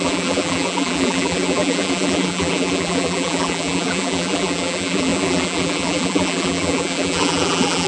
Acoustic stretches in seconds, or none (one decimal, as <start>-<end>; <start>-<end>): none